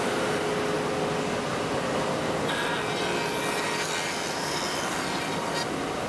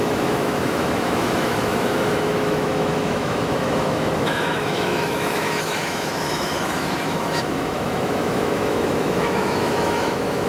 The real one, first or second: first